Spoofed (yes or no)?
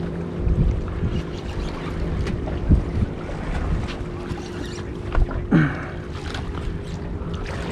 no